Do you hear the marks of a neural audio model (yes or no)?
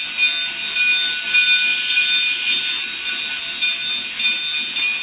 no